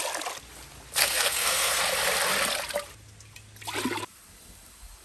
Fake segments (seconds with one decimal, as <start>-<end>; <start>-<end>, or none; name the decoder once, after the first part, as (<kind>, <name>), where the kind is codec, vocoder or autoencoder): 1.0-1.8 (codec, SNAC)